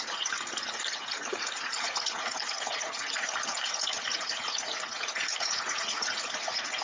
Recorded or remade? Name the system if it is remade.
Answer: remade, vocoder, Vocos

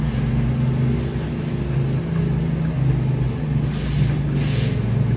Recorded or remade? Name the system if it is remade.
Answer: recorded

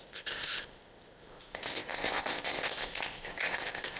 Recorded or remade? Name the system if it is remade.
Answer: remade, codec, ZipCodec